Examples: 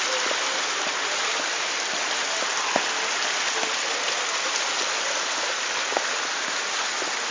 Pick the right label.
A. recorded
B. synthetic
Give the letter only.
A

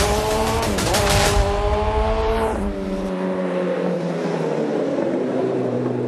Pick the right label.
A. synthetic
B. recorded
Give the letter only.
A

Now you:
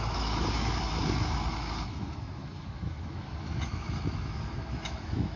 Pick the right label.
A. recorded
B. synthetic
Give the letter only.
B